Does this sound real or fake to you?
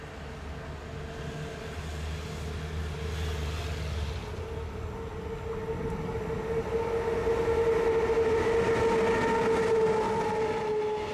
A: real